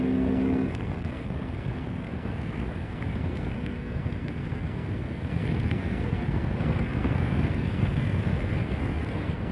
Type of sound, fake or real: fake